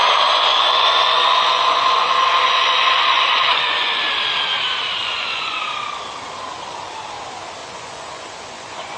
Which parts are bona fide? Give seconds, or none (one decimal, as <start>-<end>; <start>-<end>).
0.0-0.5; 4.0-5.0; 5.6-7.6